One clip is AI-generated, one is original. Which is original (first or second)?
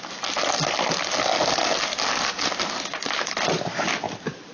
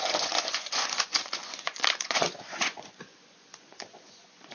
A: first